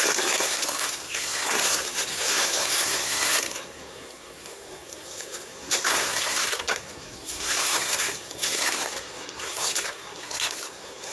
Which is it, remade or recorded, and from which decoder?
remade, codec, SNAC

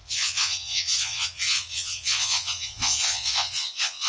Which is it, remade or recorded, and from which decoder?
remade, vocoder, Vocos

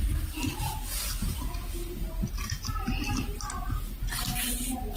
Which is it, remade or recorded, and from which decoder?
recorded